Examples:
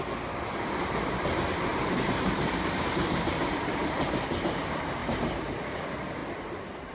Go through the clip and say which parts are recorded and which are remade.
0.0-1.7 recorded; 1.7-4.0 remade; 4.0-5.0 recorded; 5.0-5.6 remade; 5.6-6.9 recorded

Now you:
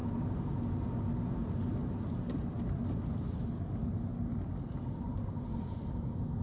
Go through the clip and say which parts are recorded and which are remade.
0.0-3.2 recorded; 3.2-4.1 remade; 4.1-5.0 recorded; 5.0-6.4 remade

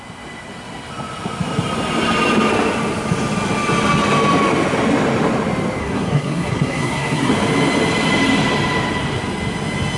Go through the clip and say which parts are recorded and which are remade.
0.0-5.8 recorded; 5.8-7.3 remade; 7.3-10.0 recorded

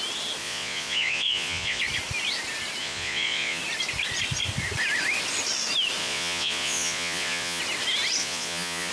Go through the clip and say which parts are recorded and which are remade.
0.0-0.4 recorded; 0.4-1.8 remade; 1.8-2.8 recorded; 2.8-3.6 remade; 3.6-6.0 recorded; 6.0-7.6 remade; 7.6-8.2 recorded; 8.2-8.9 remade

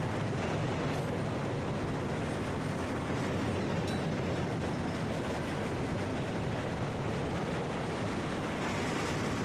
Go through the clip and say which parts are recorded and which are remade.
0.0-9.4 recorded

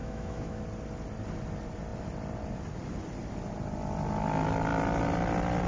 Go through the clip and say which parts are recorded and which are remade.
0.0-0.6 remade; 0.6-5.7 recorded